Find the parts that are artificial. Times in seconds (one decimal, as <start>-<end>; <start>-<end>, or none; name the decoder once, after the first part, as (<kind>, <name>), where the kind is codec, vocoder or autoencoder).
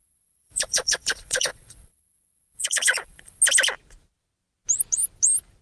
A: 0.0-3.4 (vocoder, Vocos)